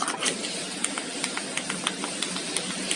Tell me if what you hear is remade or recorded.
recorded